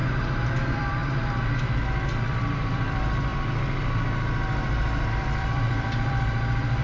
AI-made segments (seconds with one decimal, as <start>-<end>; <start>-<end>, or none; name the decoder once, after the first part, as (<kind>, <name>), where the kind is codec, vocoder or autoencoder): 0.5-1.0 (vocoder, BigVGAN v2); 1.6-3.3; 5.1-6.8